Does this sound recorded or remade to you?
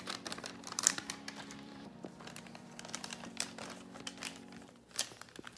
remade